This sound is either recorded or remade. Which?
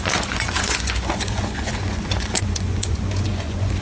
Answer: remade